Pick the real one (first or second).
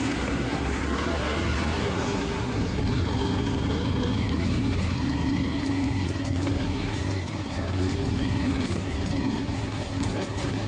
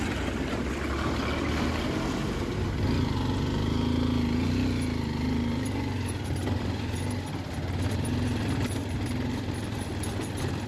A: second